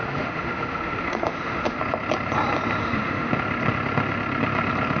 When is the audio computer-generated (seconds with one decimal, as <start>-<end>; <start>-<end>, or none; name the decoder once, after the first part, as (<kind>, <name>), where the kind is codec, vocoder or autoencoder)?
0.0-1.8 (autoencoder, DAC-VAE); 2.8-3.3